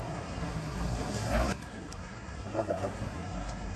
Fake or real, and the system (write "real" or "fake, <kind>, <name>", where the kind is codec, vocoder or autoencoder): fake, codec, SNAC